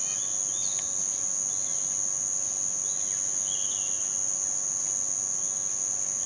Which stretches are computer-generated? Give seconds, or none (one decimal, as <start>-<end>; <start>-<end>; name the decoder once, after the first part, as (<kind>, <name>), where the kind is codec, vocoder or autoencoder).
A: none